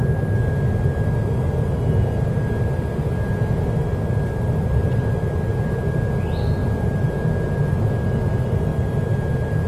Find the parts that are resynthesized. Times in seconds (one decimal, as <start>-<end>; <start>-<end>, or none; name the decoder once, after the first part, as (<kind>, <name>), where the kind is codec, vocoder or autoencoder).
6.6-7.9 (vocoder, BigVGAN v2); 8.7-9.7